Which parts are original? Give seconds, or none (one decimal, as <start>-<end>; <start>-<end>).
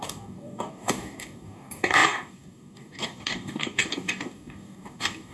none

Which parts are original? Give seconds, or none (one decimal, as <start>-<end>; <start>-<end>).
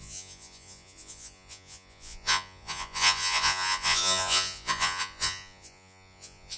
none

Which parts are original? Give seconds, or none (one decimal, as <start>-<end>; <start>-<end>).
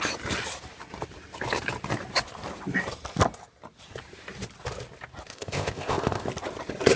0.0-5.3; 6.3-7.0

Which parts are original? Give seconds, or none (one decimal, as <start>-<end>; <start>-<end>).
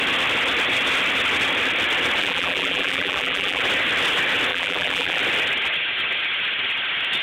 0.0-2.2; 3.6-4.5; 5.2-7.2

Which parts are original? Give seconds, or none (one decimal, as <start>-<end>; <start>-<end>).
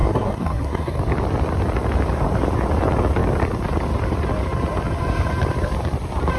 1.0-6.4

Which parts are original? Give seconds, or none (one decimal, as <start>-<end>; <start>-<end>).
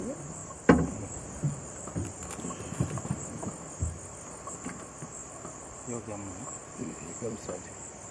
0.0-0.4; 3.4-6.6